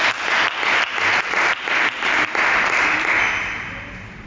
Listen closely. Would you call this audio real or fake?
real